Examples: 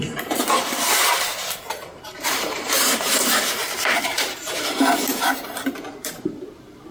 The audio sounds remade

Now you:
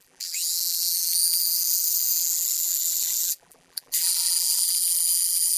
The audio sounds remade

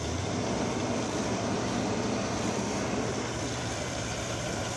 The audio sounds remade